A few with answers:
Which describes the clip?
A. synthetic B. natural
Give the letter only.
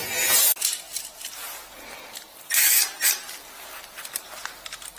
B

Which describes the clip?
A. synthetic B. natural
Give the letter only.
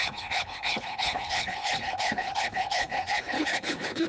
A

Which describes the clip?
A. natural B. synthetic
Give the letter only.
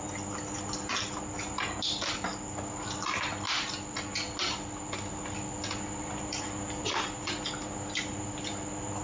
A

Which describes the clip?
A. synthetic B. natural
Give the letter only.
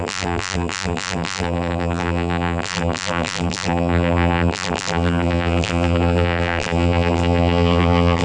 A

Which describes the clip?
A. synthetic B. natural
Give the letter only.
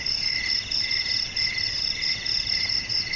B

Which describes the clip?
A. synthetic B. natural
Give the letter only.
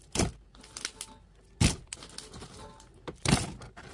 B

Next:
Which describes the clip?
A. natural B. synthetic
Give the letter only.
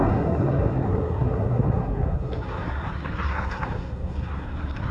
B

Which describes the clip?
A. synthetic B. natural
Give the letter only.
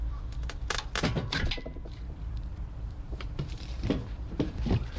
A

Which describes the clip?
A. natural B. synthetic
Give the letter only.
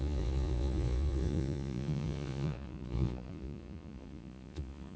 B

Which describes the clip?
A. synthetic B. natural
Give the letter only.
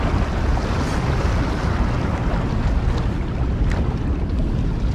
B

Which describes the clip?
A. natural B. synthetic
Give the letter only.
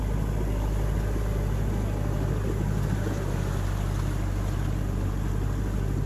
A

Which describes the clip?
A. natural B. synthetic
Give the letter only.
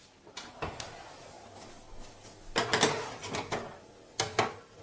A